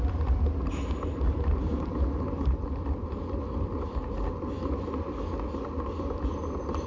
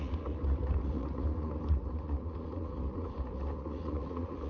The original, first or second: first